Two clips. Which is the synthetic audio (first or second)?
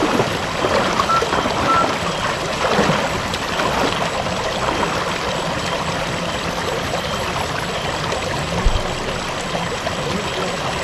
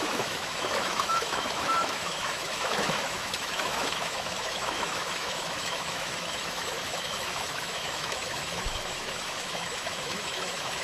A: second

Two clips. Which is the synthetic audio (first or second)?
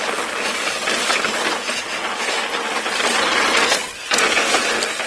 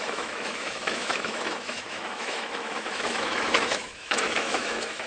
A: second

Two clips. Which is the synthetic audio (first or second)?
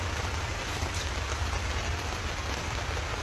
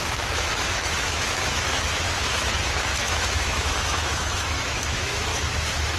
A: second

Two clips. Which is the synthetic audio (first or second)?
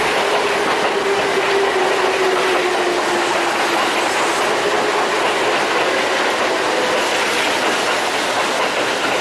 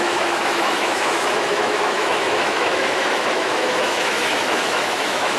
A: second